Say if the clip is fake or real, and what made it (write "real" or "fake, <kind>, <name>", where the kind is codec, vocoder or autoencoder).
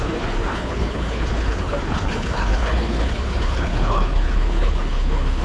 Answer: fake, codec, HILCodec